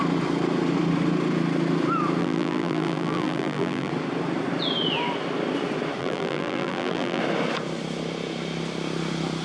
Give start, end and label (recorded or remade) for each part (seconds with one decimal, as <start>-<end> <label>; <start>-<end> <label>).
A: 0.0-2.2 recorded; 2.2-3.9 remade; 3.9-6.0 recorded; 6.0-7.2 remade; 7.2-9.4 recorded